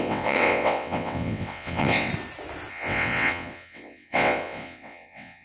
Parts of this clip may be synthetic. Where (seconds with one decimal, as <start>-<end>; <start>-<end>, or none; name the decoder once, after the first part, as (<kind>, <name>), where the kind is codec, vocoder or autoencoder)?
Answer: 0.0-2.1 (vocoder, WaveNeXt); 2.7-5.4